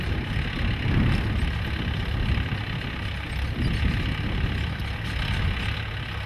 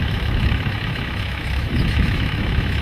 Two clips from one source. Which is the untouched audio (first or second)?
first